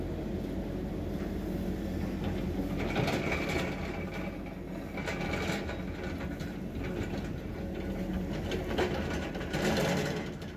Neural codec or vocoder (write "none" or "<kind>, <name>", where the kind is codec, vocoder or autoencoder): none